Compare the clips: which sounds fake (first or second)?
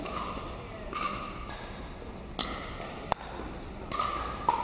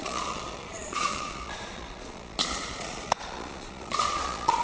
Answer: second